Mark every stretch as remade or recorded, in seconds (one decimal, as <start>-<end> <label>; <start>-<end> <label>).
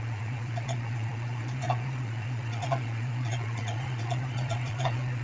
0.0-5.2 remade